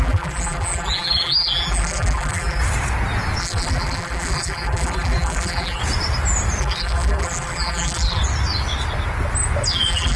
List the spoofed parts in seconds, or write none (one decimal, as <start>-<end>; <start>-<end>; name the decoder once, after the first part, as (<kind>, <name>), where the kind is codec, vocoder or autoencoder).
0.0-2.6 (vocoder, BigVGAN v2); 3.4-5.8; 6.6-8.2; 9.7-10.2